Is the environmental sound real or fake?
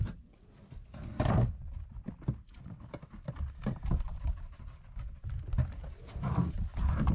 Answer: real